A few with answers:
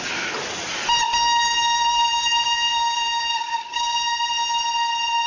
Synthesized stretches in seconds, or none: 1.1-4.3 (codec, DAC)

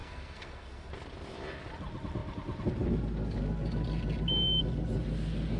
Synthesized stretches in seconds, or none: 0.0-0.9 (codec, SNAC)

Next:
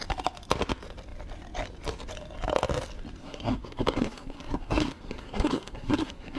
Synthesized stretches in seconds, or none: 3.2-6.4 (codec, SNAC)

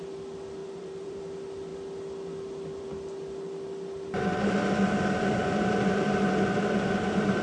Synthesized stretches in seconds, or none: 0.6-1.2 (vocoder, BigVGAN v2)

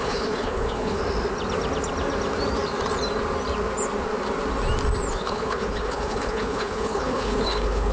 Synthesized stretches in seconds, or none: 0.0-1.0 (codec, HILCodec); 5.1-7.9

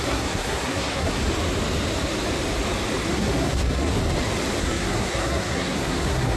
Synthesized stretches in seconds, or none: 0.0-1.2 (codec, SNAC); 3.1-4.0; 4.6-6.4

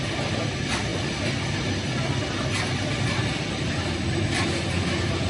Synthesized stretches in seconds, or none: none

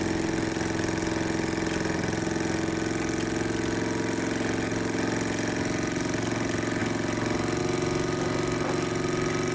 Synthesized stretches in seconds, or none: none